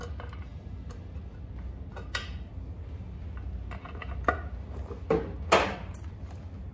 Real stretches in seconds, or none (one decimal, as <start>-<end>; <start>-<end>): 0.0-6.7